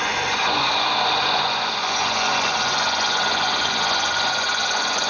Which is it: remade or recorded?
remade